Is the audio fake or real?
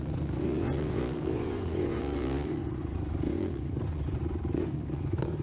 fake